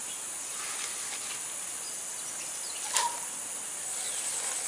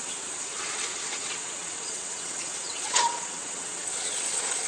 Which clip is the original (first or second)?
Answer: first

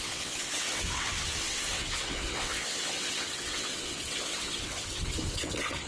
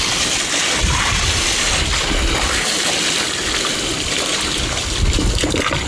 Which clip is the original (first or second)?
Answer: second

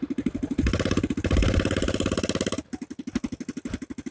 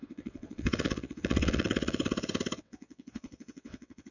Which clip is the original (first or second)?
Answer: first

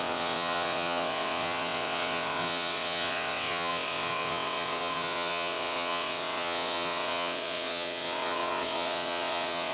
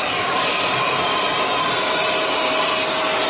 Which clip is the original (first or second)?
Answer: second